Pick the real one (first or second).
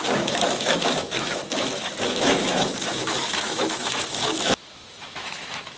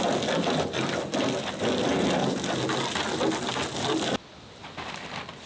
second